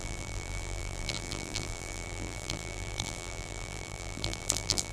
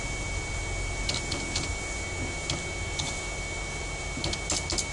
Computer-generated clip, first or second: first